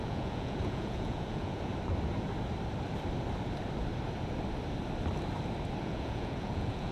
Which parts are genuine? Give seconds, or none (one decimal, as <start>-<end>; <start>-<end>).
1.7-5.8